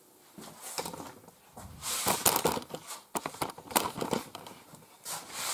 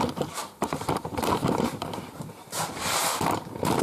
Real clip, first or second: first